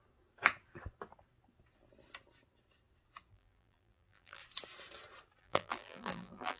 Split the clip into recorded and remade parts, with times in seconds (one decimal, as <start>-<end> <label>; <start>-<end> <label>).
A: 0.0-3.3 recorded; 3.3-4.4 remade; 4.4-5.4 recorded; 5.4-6.6 remade